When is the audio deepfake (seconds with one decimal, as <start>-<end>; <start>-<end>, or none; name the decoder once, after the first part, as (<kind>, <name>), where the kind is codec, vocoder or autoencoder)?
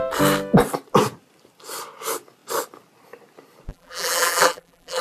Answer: 3.7-5.0 (vocoder, BigVGAN v2)